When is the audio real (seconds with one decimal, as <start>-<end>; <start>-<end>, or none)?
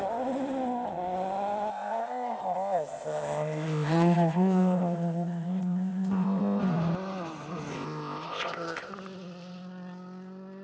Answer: 0.0-1.7; 6.6-7.7; 8.9-10.6